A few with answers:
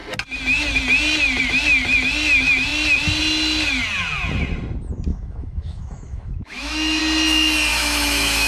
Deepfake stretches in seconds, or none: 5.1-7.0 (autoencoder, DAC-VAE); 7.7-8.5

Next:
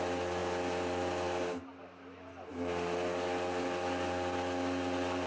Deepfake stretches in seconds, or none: none

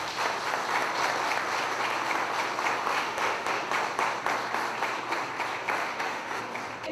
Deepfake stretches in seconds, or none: 2.9-3.5 (autoencoder, DAC-VAE); 5.8-6.4

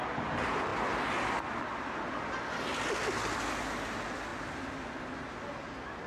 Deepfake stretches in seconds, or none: none

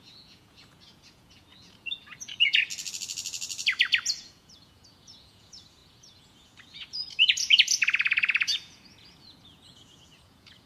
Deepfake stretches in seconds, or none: 0.0-2.6 (vocoder, Vocos); 4.2-10.7

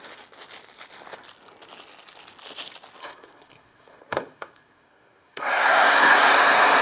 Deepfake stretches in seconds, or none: 3.0-6.3 (codec, SNAC)

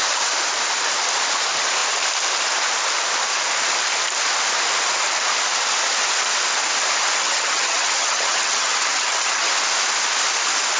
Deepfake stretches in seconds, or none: 7.2-9.5 (vocoder, HiFi-GAN)

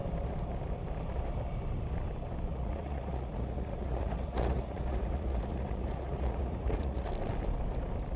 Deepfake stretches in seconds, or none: 2.5-7.1 (vocoder, Vocos)